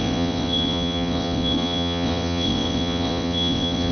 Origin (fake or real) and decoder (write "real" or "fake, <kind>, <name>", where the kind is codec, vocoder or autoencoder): fake, vocoder, WaveNeXt